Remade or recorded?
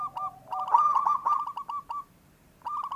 recorded